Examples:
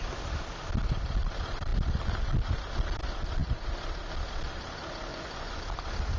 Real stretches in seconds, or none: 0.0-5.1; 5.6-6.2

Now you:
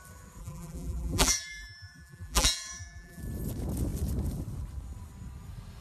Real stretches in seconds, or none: 0.0-0.4; 3.2-5.8